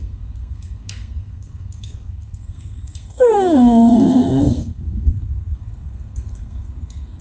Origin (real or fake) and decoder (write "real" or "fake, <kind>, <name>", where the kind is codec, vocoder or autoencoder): fake, codec, SNAC